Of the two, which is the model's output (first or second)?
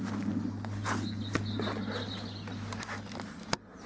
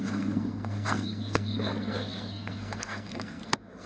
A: second